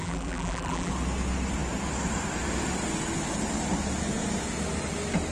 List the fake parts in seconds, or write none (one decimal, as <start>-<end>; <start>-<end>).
0.0-0.9